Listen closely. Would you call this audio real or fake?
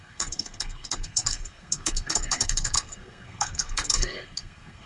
fake